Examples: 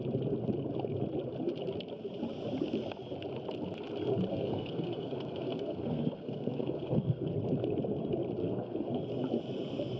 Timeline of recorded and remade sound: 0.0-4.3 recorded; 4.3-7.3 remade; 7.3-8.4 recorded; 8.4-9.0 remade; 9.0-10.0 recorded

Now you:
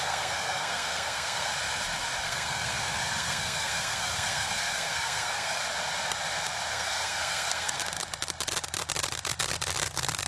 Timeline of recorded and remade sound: 0.0-1.5 remade; 1.5-2.2 recorded; 2.2-5.6 remade; 5.6-6.7 recorded; 6.7-7.8 remade; 7.8-10.3 recorded

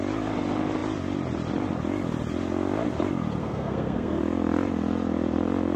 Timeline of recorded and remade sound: 0.0-3.4 recorded; 3.4-4.2 remade; 4.2-5.8 recorded

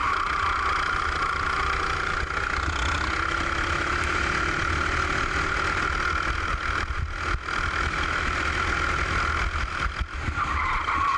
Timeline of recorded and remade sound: 0.0-11.2 recorded

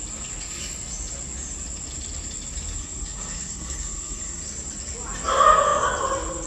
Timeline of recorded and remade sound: 0.0-2.8 recorded; 2.8-4.4 remade; 4.4-6.5 recorded